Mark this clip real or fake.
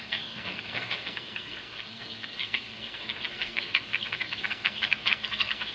fake